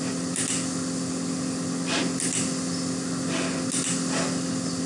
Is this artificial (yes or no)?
no